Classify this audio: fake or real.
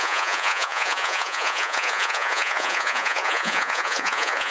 fake